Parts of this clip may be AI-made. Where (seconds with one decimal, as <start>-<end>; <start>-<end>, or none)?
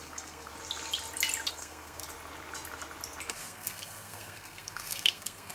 0.0-0.5; 1.5-2.0; 3.3-5.5